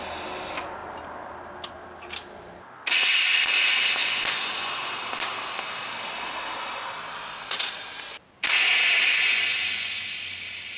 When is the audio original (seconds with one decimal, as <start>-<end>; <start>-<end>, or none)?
0.0-4.0; 4.9-9.1; 10.1-10.8